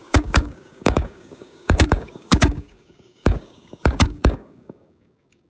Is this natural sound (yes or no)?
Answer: no